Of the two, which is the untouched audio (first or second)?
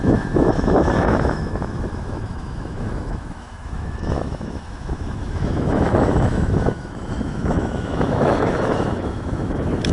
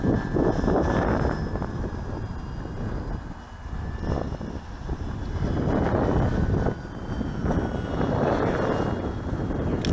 second